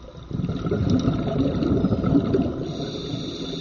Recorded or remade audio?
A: recorded